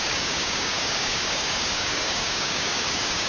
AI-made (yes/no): yes